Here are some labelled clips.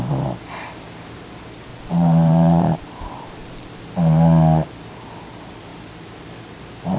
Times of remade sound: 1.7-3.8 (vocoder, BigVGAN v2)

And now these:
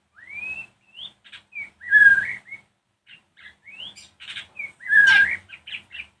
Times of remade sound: 2.0-3.8 (vocoder, BigVGAN v2)